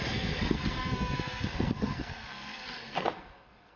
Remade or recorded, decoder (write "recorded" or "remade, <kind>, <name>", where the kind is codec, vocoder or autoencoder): remade, codec, SNAC